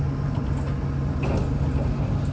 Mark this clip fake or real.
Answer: real